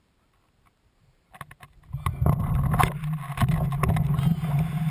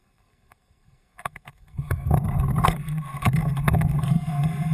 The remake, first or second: second